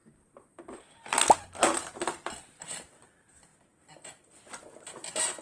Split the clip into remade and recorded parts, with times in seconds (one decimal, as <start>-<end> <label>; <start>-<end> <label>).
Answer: 0.0-5.4 recorded